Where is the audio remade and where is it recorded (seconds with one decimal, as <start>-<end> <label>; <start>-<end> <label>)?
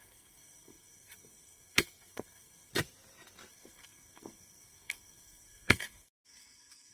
0.0-2.7 remade; 2.7-3.5 recorded; 3.5-6.9 remade